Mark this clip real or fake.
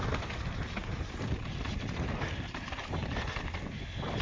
real